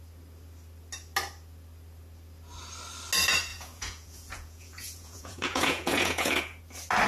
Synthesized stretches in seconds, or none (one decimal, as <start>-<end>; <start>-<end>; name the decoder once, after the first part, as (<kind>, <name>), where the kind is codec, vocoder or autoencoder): 3.5-6.6 (vocoder, Vocos)